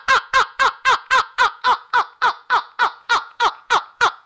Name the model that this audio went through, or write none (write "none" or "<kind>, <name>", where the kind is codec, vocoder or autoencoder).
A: vocoder, Vocos